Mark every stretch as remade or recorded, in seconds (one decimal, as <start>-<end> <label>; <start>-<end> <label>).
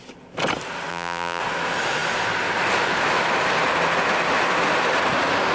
0.0-0.9 recorded; 0.9-1.4 remade; 1.4-5.5 recorded